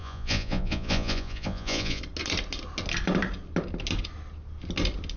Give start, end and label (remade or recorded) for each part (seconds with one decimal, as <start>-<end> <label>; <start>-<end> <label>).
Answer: 0.0-2.0 remade; 2.0-5.2 recorded